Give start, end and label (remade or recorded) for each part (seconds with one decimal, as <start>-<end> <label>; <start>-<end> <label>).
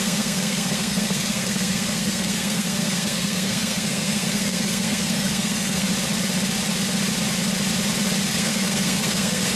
0.0-5.9 remade; 5.9-8.3 recorded; 8.3-9.6 remade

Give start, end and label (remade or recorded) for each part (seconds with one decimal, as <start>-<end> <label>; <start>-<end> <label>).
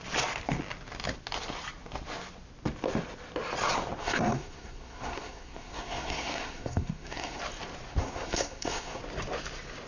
0.0-4.0 recorded; 4.0-7.4 remade; 7.4-8.0 recorded; 8.0-9.0 remade; 9.0-9.9 recorded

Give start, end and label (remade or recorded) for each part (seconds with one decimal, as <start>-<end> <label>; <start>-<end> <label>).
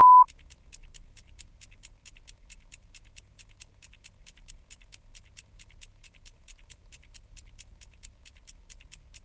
0.0-9.2 recorded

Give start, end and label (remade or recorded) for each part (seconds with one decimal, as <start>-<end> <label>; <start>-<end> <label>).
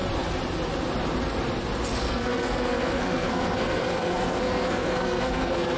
0.0-2.0 recorded; 2.0-5.8 remade